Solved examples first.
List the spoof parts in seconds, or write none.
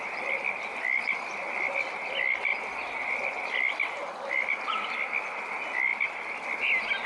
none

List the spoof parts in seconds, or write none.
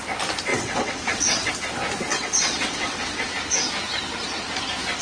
0.5-1.5 (vocoder, WaveNeXt); 2.1-3.3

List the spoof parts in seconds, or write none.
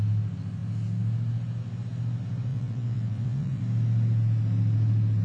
2.5-3.6 (vocoder, WaveNeXt)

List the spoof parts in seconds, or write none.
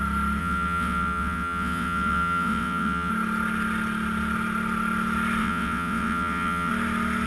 0.4-3.1 (vocoder, WaveNeXt); 5.4-6.7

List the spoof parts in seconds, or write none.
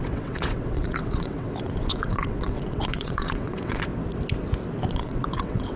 0.0-3.9 (vocoder, WaveNeXt); 4.9-5.8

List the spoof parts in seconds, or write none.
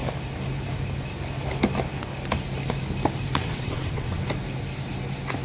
3.4-4.2 (vocoder, WaveNeXt)